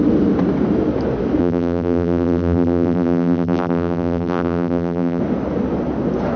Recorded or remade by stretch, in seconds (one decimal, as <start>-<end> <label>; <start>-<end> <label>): 0.0-1.4 recorded; 1.4-5.2 remade; 5.2-6.4 recorded